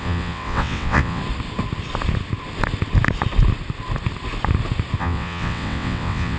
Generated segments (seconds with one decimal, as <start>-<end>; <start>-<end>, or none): 0.0-1.2; 5.0-6.4